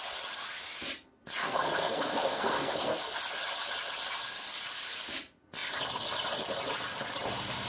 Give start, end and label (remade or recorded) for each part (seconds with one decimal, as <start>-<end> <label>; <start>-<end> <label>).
0.0-1.4 recorded; 1.4-3.2 remade; 3.2-7.7 recorded